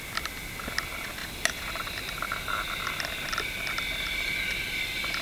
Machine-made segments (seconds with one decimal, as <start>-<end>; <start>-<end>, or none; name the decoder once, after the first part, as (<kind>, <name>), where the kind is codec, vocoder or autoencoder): none